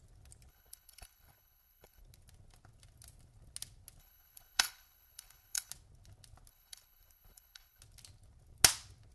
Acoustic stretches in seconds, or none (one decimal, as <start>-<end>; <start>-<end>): 0.0-0.5; 2.0-4.0; 5.7-6.5; 7.8-9.1